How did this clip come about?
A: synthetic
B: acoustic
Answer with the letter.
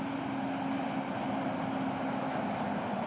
B